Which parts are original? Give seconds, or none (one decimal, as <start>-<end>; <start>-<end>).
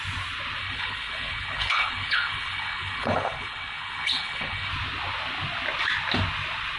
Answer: 0.0-0.6; 4.7-6.8